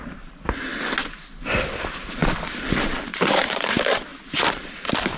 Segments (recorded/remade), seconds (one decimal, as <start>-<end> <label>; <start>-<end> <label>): 0.0-0.7 remade; 0.7-1.8 recorded; 1.8-2.2 remade; 2.2-2.7 recorded; 2.7-5.2 remade